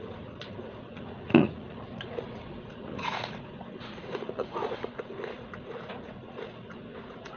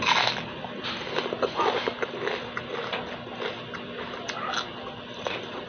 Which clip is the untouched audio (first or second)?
second